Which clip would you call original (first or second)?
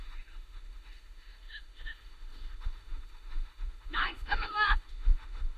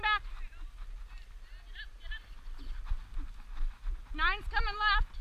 second